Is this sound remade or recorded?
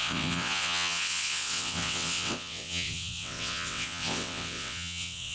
remade